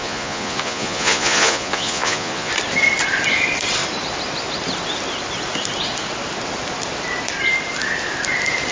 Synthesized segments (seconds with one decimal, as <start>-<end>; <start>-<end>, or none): 0.0-2.5